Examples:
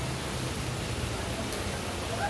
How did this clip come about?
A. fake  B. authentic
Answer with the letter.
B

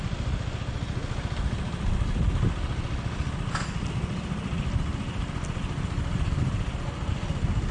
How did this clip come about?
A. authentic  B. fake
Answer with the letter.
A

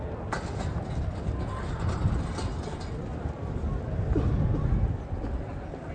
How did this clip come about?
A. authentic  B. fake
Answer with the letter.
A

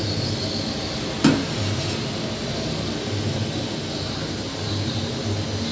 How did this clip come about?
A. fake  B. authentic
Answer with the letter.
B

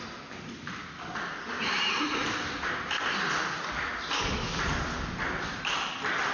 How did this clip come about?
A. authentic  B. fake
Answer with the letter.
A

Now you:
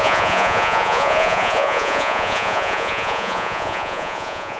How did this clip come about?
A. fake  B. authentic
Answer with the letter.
A